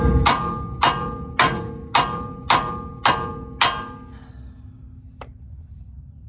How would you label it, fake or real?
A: real